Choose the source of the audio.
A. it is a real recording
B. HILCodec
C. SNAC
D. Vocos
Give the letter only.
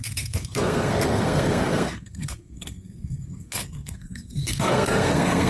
C